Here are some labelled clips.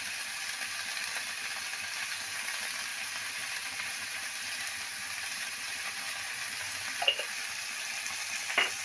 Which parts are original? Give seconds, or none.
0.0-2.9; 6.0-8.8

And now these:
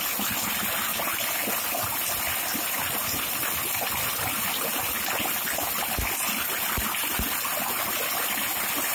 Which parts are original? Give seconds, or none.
0.0-8.9

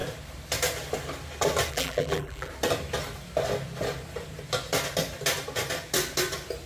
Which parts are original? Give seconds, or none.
0.0-1.7; 2.5-6.7

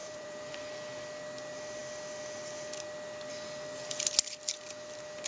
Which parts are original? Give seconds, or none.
0.6-5.3

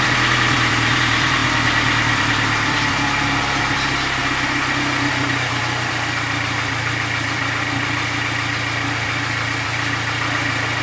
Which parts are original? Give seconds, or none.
none

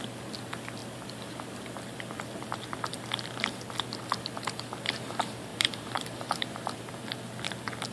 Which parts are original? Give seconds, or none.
0.0-5.5; 6.9-7.9

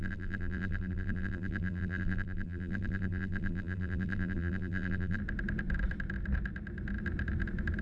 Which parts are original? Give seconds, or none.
5.2-7.8

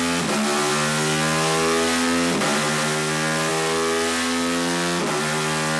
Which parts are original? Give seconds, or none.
0.0-5.8